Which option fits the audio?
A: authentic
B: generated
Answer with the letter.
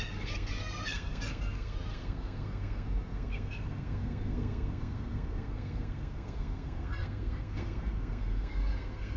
B